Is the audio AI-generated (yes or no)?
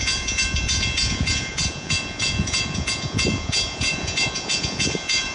yes